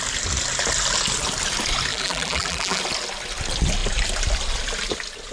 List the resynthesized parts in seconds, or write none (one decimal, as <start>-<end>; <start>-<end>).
1.9-2.8